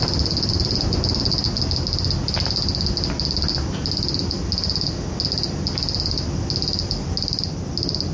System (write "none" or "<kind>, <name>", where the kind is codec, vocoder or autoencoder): none